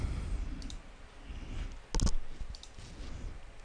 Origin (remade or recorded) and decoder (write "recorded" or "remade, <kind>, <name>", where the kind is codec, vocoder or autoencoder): recorded